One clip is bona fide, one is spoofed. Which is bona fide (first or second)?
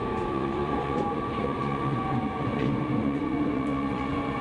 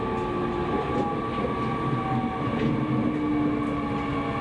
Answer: second